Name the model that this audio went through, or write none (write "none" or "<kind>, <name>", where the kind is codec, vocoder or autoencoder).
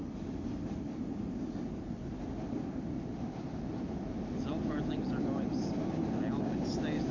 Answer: none